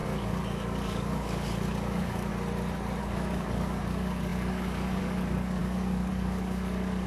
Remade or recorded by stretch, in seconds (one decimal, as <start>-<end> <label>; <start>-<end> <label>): 0.0-2.3 remade; 2.3-3.0 recorded; 3.0-7.1 remade